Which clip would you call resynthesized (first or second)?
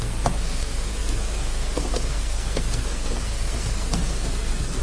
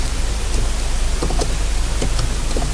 first